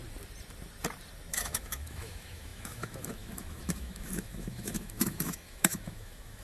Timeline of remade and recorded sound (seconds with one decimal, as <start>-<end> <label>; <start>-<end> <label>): 0.0-1.3 recorded; 1.3-6.4 remade